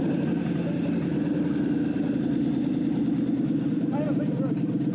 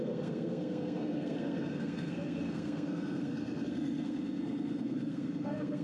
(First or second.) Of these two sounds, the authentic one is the first